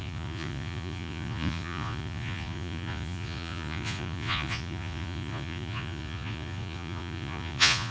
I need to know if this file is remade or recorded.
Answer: remade